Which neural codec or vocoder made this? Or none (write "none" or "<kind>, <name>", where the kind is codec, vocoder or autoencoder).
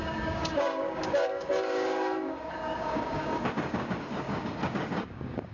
codec, DAC